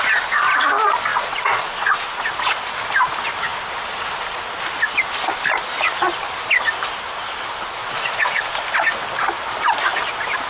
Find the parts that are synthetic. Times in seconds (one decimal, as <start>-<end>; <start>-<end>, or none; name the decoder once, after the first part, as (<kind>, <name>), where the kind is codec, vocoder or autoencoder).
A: 1.1-2.3 (vocoder, Vocos); 7.8-8.4